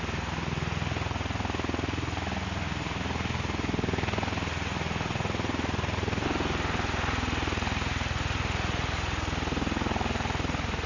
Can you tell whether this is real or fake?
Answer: real